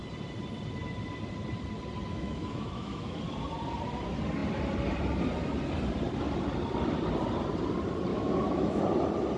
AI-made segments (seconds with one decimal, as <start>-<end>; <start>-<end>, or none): 2.1-3.2; 8.1-8.8